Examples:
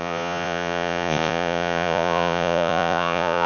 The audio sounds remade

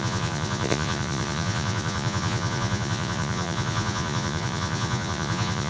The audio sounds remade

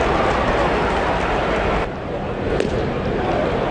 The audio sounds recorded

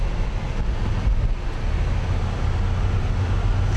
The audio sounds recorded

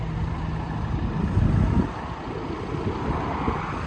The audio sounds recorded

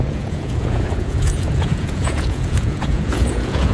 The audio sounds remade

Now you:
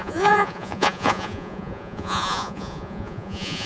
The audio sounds remade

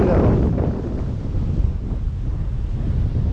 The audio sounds recorded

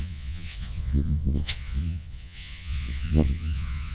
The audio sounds remade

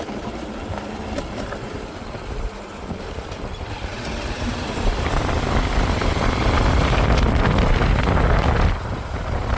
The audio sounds recorded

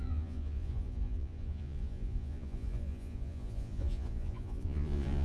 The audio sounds remade